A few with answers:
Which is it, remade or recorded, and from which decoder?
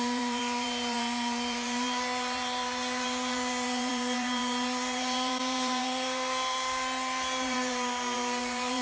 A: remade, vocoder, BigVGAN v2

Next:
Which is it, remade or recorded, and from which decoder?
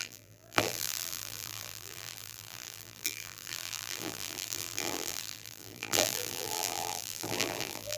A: remade, vocoder, BigVGAN v2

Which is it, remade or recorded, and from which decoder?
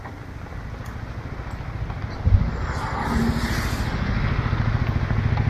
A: recorded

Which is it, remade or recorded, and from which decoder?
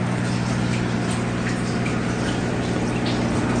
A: recorded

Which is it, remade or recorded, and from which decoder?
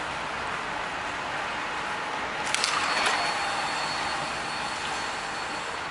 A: recorded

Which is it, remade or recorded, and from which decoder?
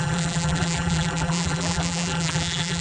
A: remade, vocoder, BigVGAN v2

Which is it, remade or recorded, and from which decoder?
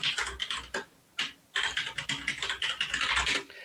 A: recorded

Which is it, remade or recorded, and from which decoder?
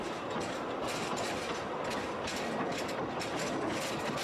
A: recorded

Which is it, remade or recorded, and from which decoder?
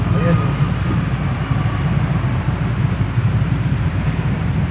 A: remade, vocoder, BigVGAN v2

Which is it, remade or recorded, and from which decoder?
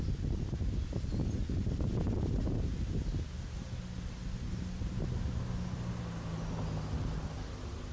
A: recorded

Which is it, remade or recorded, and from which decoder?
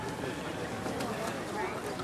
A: remade, vocoder, BigVGAN v2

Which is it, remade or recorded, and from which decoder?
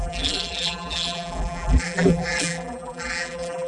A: remade, vocoder, BigVGAN v2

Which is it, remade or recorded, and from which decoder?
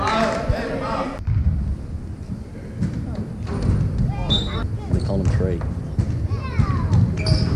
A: recorded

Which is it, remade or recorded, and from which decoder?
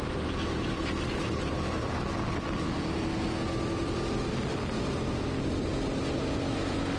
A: recorded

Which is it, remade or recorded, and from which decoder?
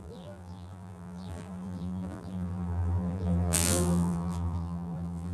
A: remade, vocoder, BigVGAN v2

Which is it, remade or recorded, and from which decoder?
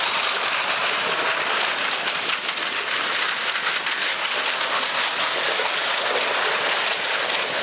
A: recorded